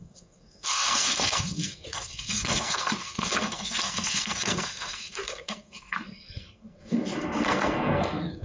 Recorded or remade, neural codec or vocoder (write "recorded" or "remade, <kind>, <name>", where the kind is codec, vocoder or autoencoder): remade, codec, SNAC